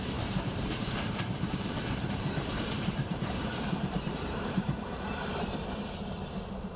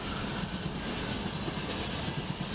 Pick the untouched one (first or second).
second